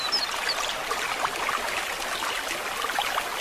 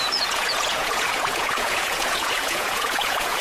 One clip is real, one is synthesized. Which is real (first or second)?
first